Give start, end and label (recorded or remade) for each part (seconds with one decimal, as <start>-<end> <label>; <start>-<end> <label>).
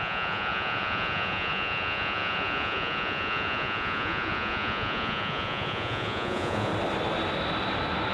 0.0-6.7 remade; 6.7-8.1 recorded